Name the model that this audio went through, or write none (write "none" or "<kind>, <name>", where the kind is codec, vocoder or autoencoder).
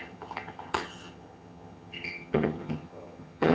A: vocoder, HiFi-GAN